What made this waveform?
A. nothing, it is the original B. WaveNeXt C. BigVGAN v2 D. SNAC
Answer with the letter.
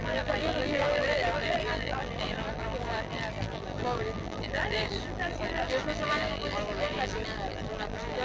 C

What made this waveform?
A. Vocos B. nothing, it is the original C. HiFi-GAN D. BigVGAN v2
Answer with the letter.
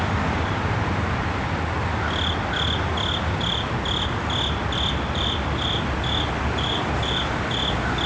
B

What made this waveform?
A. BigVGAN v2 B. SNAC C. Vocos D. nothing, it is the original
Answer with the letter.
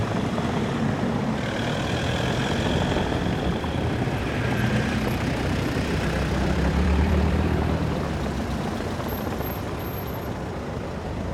A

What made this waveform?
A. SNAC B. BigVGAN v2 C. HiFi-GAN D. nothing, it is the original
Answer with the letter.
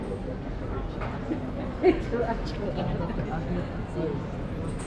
D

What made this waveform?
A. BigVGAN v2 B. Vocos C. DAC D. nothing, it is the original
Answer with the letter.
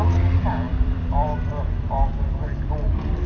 A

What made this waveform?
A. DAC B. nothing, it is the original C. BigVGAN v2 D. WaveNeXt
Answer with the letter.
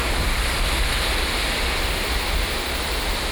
B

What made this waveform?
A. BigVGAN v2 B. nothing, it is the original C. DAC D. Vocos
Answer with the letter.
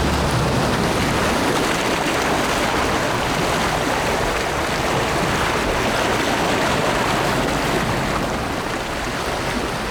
B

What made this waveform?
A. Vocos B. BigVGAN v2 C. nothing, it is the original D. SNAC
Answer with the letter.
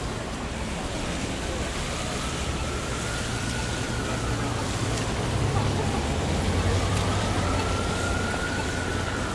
C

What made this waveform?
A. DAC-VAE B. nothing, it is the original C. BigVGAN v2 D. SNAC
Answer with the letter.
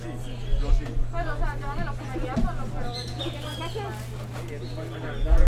B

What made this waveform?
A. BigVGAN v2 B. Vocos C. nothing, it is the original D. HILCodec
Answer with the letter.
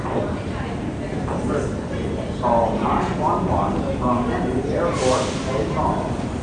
C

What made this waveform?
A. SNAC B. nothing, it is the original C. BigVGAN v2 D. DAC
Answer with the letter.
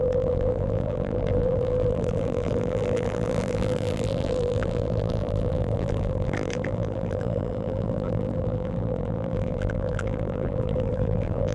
C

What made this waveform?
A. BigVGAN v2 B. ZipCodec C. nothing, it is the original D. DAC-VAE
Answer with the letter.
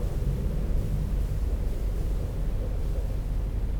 C